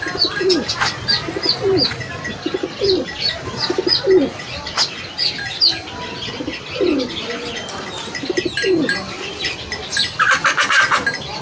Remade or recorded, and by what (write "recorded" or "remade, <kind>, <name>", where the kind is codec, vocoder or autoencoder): recorded